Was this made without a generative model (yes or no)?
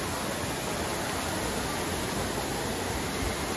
yes